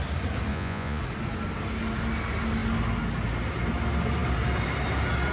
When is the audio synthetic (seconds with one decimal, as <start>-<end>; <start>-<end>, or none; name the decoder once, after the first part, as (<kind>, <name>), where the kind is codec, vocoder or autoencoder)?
0.5-1.0 (vocoder, Vocos)